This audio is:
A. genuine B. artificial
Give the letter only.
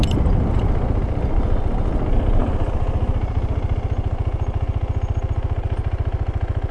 A